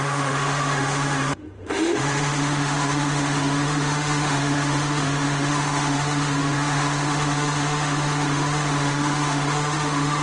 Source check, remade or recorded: remade